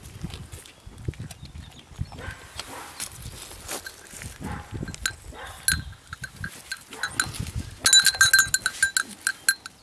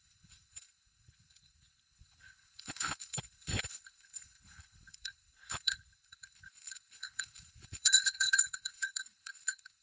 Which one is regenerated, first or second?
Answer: second